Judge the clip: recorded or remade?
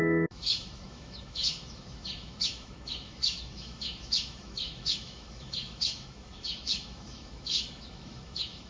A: remade